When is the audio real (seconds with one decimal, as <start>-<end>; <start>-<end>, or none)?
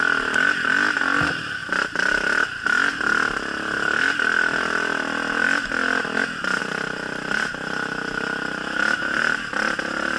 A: 0.0-10.2